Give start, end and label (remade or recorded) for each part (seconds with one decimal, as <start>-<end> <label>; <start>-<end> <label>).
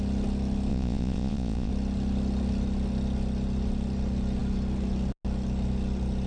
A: 0.0-0.7 recorded; 0.7-1.7 remade; 1.7-6.3 recorded